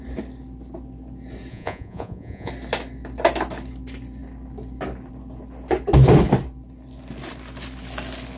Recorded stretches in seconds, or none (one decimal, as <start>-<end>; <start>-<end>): 0.0-1.5; 2.5-8.4